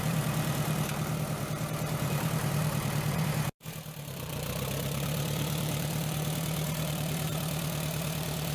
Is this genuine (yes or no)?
no